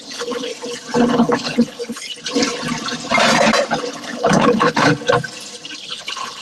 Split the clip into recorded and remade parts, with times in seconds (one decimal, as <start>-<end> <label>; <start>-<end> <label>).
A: 0.0-0.5 remade; 0.5-1.1 recorded; 1.1-2.1 remade; 2.1-3.9 recorded; 3.9-4.9 remade; 4.9-5.8 recorded; 5.8-6.4 remade